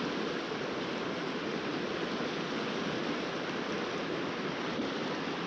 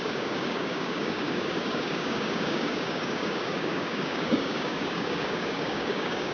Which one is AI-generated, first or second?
second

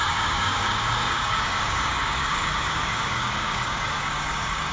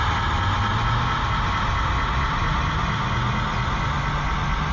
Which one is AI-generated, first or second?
first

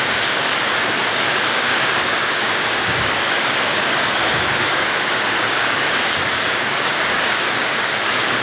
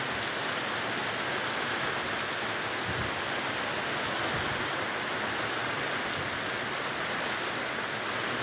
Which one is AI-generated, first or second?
first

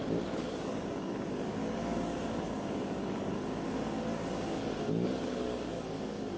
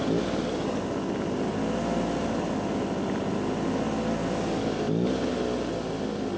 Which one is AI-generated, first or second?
first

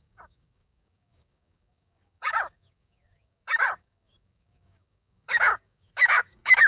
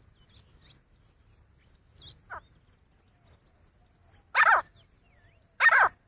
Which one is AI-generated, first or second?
first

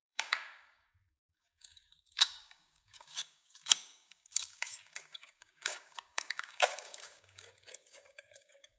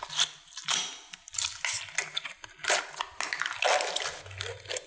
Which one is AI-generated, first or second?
first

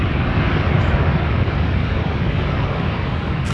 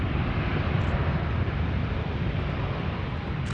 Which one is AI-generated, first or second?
first